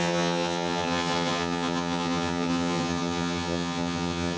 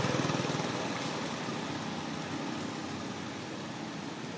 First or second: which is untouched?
second